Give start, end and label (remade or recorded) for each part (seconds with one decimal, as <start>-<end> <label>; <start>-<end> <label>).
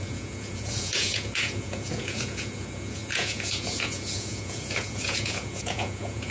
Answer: 0.0-6.3 remade